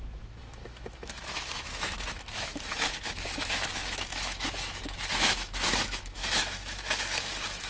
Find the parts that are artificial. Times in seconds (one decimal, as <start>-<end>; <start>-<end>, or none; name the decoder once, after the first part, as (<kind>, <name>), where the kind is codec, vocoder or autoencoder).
0.0-7.7 (autoencoder, DAC-VAE)

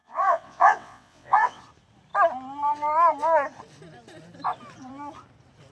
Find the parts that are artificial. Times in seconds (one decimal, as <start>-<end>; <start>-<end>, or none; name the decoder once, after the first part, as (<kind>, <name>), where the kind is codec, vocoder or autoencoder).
0.0-1.6 (vocoder, WaveNeXt)

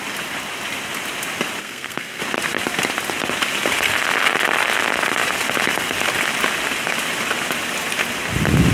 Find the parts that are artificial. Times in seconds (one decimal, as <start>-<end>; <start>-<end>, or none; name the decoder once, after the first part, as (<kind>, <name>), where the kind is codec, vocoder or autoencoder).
1.6-2.2 (codec, SNAC)